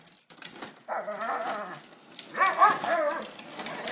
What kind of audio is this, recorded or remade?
recorded